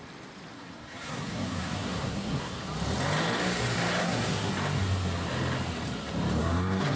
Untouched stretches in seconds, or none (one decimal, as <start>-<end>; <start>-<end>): 0.0-0.5; 2.6-4.0; 4.5-6.4